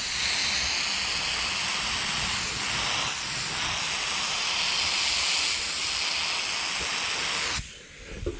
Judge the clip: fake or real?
real